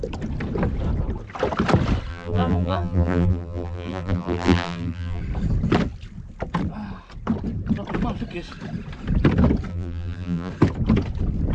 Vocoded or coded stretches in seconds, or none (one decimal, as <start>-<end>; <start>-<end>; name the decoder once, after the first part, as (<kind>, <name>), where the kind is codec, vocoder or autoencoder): 2.1-5.2 (vocoder, BigVGAN v2); 9.7-10.5